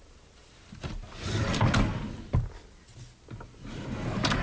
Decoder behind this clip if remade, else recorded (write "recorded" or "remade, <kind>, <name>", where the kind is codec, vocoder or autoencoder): recorded